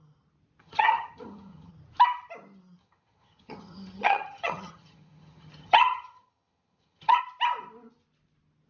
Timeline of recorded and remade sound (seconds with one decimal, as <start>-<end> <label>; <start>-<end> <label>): 0.0-0.6 recorded; 0.6-1.7 remade; 1.7-2.8 recorded; 2.8-7.2 remade; 7.2-8.7 recorded